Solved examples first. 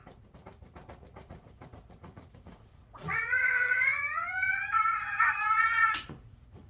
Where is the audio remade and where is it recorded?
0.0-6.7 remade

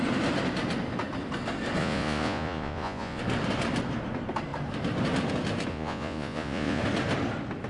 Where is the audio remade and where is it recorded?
0.0-1.8 recorded; 1.8-3.2 remade; 3.2-5.7 recorded; 5.7-6.8 remade; 6.8-7.7 recorded

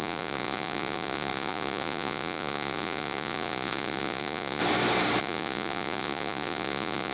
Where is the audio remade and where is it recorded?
0.0-4.6 remade; 4.6-5.2 recorded; 5.2-7.1 remade

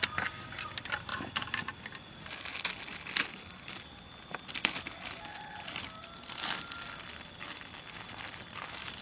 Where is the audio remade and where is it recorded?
0.0-9.0 recorded

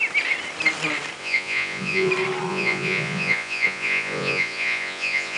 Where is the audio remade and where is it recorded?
0.0-1.2 recorded; 1.2-2.1 remade; 2.1-2.5 recorded; 2.5-5.4 remade